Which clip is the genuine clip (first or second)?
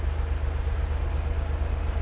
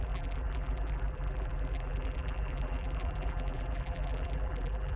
first